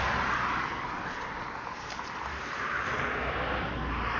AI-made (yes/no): no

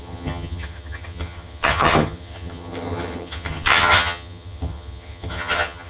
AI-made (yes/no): yes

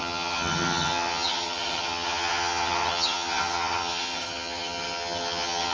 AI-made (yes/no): yes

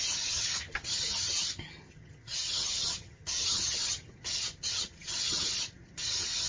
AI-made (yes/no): yes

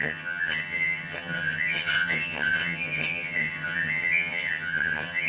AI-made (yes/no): yes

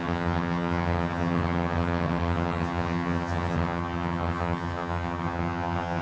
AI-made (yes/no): yes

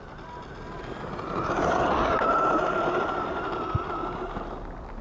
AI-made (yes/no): no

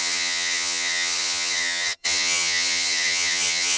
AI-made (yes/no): yes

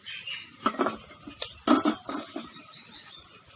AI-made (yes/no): no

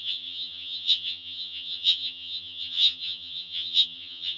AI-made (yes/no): yes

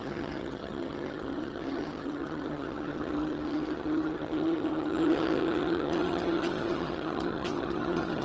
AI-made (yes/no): yes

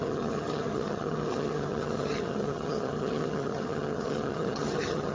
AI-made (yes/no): yes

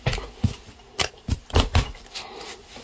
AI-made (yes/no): no